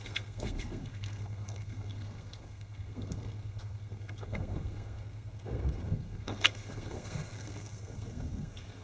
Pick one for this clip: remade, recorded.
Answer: remade